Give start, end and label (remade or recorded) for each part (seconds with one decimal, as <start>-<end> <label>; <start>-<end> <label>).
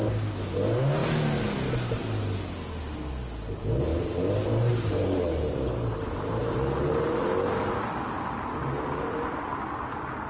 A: 0.0-3.9 recorded; 3.9-6.9 remade; 6.9-8.6 recorded; 8.6-9.4 remade; 9.4-10.3 recorded